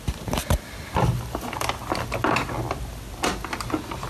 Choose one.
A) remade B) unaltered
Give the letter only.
B